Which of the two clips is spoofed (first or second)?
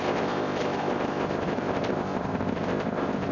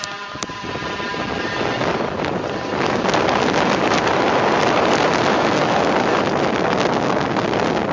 first